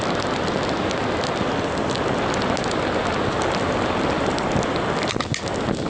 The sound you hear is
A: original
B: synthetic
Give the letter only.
A